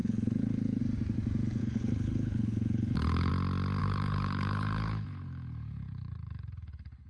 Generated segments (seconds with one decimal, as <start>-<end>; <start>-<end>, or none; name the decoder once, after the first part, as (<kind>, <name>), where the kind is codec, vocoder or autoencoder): 0.0-0.8 (codec, HILCodec); 1.6-3.3; 3.8-7.1